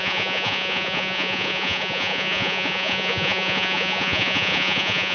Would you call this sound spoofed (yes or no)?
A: yes